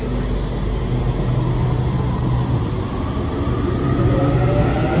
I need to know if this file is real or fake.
real